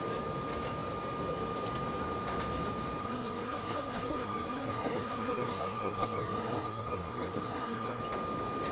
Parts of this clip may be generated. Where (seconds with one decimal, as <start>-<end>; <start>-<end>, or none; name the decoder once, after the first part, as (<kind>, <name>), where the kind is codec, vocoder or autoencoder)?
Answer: 3.0-8.0 (codec, SNAC)